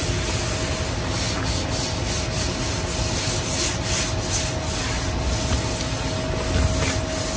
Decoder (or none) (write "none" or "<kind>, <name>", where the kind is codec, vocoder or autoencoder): none